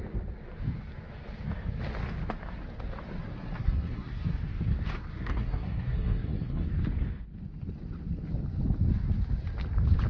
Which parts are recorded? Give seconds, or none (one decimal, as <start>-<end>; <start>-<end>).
0.0-3.3; 4.2-5.1; 6.7-10.1